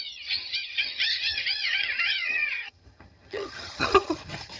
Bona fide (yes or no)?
no